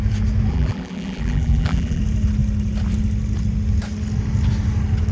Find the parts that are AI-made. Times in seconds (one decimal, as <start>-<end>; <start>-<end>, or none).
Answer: 0.5-2.0